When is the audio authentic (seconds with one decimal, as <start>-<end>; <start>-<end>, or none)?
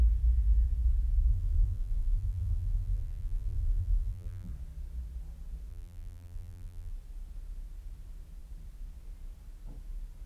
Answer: 0.0-1.3; 4.5-5.7; 6.9-10.3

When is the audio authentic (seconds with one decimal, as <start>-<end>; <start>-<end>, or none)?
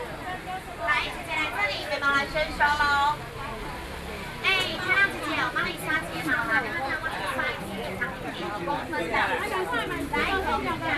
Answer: 0.0-7.0; 8.8-11.0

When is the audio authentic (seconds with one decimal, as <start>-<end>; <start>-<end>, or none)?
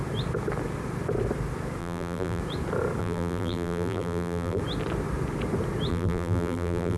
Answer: 0.0-1.8; 2.4-3.0; 4.6-5.9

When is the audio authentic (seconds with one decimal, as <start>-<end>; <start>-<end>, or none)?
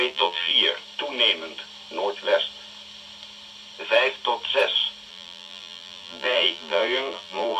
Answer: 0.5-5.1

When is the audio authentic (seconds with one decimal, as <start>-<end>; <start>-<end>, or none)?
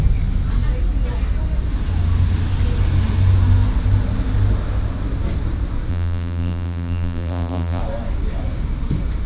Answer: 0.0-5.9; 7.8-9.3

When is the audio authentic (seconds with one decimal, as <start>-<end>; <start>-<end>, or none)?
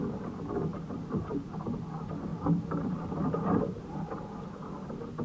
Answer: 0.0-0.7; 1.5-2.3; 4.2-5.2